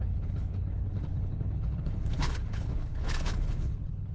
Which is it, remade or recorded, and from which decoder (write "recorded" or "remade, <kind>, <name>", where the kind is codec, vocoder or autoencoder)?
remade, codec, HILCodec